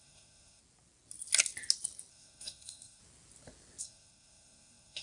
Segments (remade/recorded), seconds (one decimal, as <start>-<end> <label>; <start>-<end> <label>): 0.0-0.6 remade; 0.6-2.1 recorded; 2.1-3.0 remade; 3.0-3.8 recorded; 3.8-5.0 remade